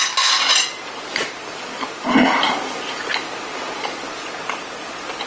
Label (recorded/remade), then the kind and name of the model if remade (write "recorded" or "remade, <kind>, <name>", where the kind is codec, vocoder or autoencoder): recorded